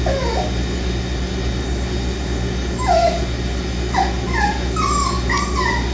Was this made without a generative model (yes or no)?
yes